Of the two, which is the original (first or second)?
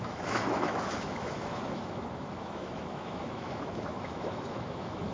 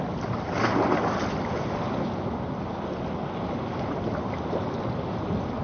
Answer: second